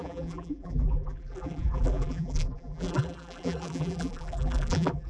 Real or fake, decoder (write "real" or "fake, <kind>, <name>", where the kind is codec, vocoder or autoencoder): fake, vocoder, BigVGAN v2